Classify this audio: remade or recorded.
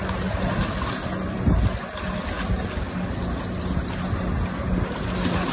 recorded